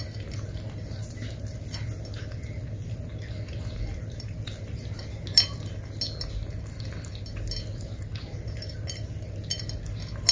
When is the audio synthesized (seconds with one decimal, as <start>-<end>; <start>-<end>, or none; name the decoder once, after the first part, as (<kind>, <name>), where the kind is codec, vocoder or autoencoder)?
none